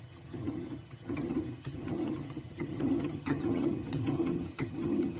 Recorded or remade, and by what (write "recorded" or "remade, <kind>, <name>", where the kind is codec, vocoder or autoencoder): remade, vocoder, HiFi-GAN